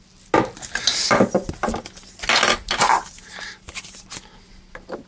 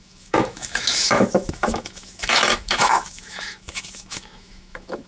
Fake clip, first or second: second